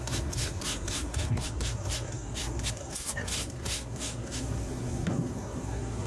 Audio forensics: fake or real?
fake